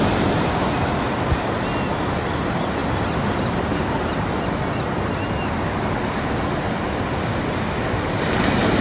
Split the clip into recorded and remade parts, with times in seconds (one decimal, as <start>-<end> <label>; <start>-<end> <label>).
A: 0.0-8.8 recorded

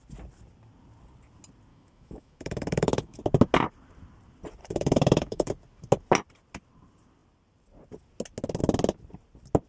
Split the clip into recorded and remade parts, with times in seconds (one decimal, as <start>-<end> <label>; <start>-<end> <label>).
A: 0.0-1.7 recorded; 1.7-3.2 remade; 3.2-4.6 recorded; 4.6-5.5 remade; 5.5-9.7 recorded

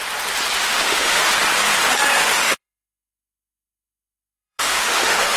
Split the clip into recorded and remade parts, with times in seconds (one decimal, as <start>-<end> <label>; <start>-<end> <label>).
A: 0.0-0.6 recorded; 0.6-1.2 remade; 1.2-2.2 recorded; 2.2-5.4 remade

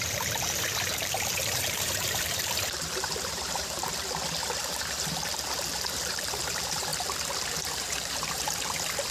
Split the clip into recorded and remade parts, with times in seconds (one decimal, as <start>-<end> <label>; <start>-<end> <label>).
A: 0.0-3.9 remade; 3.9-4.6 recorded; 4.6-6.9 remade; 6.9-7.4 recorded; 7.4-9.1 remade

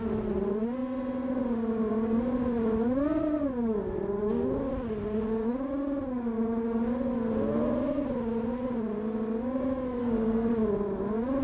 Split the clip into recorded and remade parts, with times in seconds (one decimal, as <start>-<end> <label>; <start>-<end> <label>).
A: 0.0-10.0 recorded; 10.0-10.5 remade; 10.5-11.4 recorded

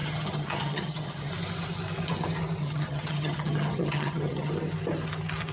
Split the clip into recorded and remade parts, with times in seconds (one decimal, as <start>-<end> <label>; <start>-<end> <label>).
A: 0.0-1.3 remade; 1.3-2.6 recorded; 2.6-4.5 remade; 4.5-5.5 recorded

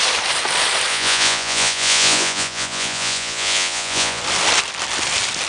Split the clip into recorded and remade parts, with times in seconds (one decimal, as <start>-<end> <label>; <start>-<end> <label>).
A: 0.0-0.9 recorded; 0.9-4.2 remade; 4.2-5.5 recorded

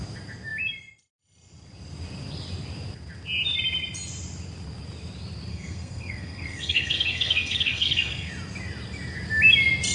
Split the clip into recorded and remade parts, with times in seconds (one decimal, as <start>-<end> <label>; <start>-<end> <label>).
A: 0.0-5.5 recorded; 5.5-8.3 remade; 8.3-9.9 recorded